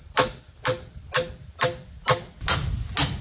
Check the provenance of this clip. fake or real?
real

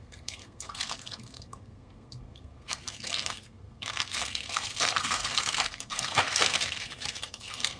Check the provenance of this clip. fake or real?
fake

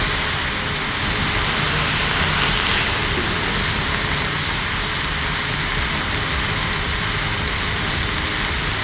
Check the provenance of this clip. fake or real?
real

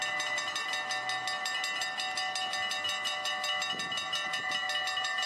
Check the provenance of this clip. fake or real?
real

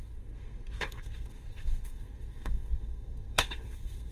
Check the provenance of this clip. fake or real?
fake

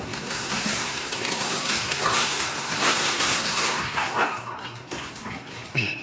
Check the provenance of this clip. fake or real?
fake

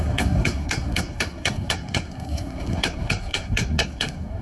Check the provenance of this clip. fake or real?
fake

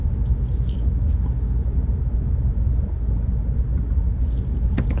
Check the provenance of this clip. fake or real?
real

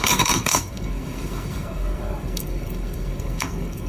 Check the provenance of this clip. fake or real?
fake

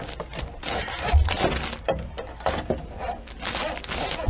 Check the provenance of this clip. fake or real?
real